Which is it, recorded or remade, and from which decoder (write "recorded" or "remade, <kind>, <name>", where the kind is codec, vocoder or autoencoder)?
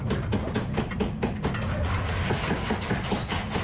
recorded